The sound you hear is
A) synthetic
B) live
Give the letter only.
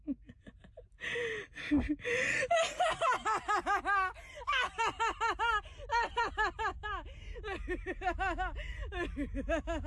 B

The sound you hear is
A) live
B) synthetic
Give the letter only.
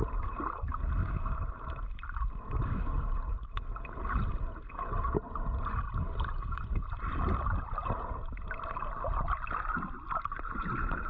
A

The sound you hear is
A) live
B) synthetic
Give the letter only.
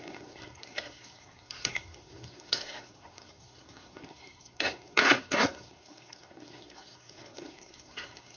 B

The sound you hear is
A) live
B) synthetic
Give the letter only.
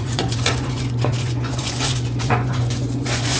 B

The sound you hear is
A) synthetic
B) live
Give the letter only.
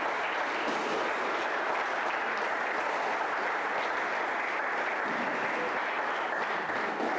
B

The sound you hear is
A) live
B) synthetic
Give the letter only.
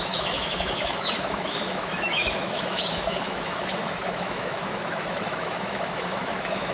B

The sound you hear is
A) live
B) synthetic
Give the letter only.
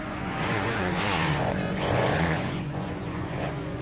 B